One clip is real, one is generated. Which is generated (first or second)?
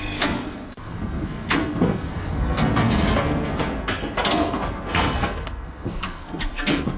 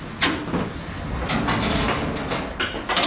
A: first